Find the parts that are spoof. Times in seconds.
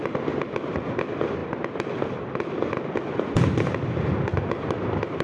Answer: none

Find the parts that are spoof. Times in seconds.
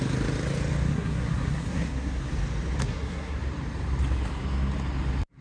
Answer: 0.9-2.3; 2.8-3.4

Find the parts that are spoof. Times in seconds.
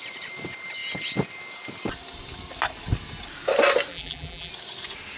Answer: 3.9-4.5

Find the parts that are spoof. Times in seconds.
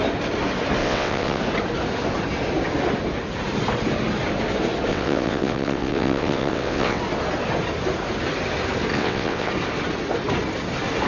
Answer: 0.8-1.4; 4.9-7.0; 8.9-9.5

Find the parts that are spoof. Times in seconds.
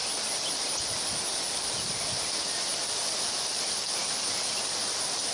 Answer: none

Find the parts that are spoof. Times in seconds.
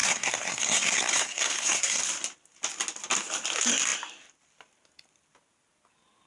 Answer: 0.0-2.0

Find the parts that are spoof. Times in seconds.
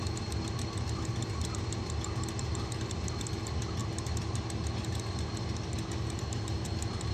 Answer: none